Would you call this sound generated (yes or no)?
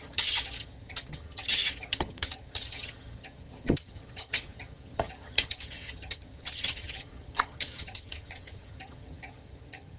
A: yes